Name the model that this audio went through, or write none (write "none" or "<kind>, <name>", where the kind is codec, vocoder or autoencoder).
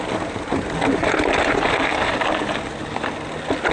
none